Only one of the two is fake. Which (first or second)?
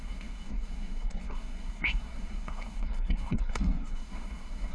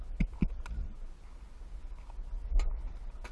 first